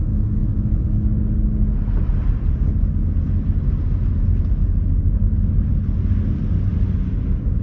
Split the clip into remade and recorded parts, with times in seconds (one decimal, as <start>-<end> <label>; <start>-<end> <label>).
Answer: 0.0-7.6 recorded

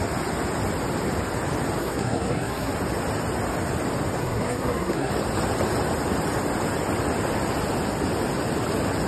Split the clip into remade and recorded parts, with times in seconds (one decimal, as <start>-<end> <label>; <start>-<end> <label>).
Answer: 0.0-1.8 recorded; 1.8-2.7 remade; 2.7-4.2 recorded; 4.2-5.1 remade; 5.1-9.1 recorded